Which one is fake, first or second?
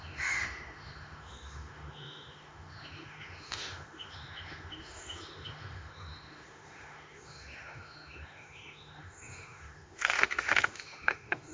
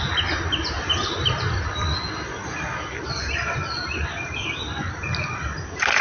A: first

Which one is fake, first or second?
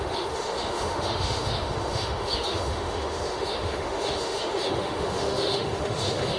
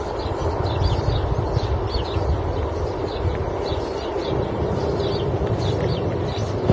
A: first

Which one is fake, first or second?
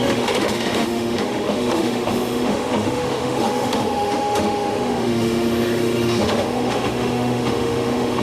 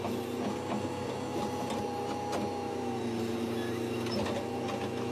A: first